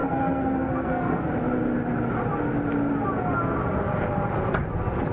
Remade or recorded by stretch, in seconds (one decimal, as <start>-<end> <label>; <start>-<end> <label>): 0.0-1.3 remade; 1.3-5.1 recorded